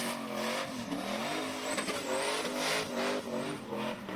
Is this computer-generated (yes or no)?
no